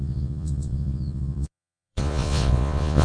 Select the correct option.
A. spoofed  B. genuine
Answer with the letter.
A